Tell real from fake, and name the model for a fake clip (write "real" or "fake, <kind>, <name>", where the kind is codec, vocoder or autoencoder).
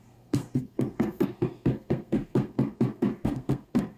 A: fake, codec, SNAC